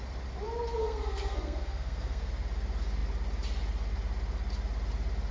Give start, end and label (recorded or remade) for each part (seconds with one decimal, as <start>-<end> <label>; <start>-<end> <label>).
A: 0.0-0.8 recorded; 0.8-2.3 remade; 2.3-5.3 recorded